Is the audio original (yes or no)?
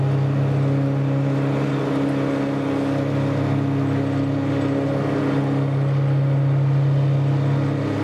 yes